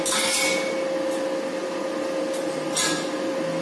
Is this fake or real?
real